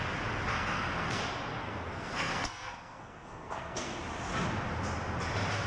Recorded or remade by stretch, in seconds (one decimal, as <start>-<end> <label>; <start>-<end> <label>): 0.0-0.5 recorded; 0.5-1.2 remade; 1.2-1.6 recorded; 1.6-4.0 remade; 4.0-5.7 recorded